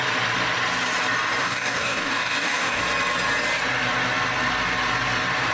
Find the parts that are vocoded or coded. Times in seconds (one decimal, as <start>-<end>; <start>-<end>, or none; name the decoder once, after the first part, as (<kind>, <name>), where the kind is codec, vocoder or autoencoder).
1.4-2.8 (codec, DAC)